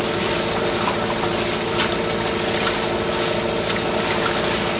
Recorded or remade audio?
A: recorded